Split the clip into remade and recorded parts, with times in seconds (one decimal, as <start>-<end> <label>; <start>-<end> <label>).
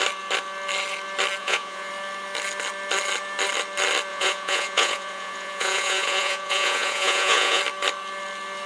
0.0-1.4 recorded; 1.4-1.9 remade; 1.9-4.1 recorded; 4.1-7.6 remade; 7.6-8.7 recorded